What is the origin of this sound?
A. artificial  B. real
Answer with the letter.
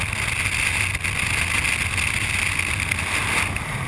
B